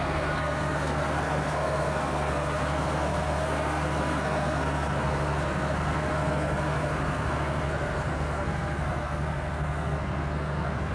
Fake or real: fake